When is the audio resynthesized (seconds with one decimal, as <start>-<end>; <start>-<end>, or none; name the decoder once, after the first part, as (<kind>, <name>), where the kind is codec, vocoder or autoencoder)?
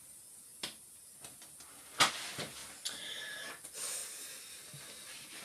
none